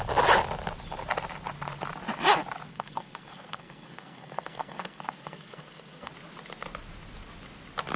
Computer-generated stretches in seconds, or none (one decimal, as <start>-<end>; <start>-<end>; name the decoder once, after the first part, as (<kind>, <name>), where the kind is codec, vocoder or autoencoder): 2.7-6.1 (codec, SNAC)